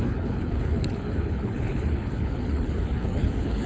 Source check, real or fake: fake